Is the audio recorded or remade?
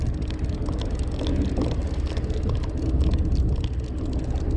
recorded